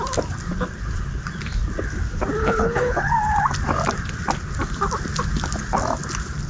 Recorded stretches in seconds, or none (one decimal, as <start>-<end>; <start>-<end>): 0.0-2.4; 3.1-6.5